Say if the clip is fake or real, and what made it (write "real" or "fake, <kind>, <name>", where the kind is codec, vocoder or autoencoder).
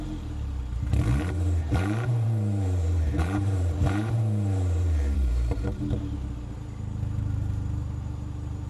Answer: fake, vocoder, BigVGAN v2